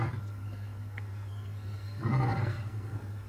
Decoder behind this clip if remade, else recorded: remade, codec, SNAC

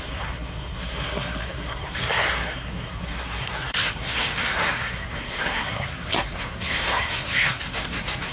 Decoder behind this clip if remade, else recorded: remade, codec, SNAC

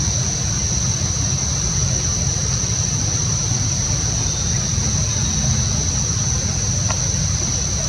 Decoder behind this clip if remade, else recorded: recorded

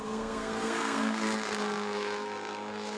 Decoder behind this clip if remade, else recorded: remade, codec, SNAC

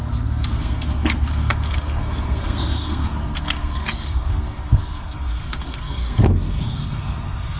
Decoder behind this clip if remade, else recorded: remade, codec, SNAC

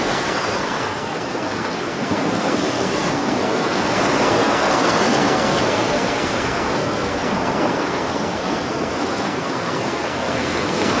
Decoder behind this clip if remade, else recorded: remade, codec, SNAC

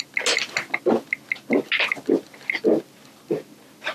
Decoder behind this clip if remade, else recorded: recorded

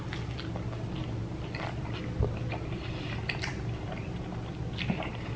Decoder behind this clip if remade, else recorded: recorded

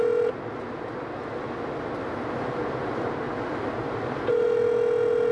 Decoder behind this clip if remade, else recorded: recorded